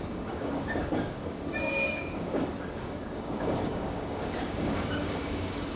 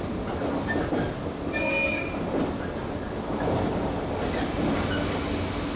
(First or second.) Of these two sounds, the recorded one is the second